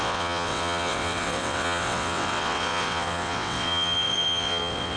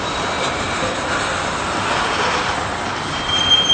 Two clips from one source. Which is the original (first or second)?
second